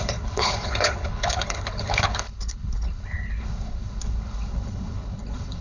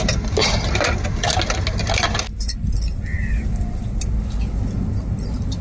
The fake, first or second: first